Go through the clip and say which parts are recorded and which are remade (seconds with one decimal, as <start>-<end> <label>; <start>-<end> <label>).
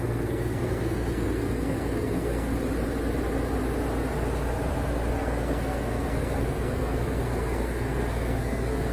0.0-2.5 remade; 2.5-5.1 recorded; 5.1-8.9 remade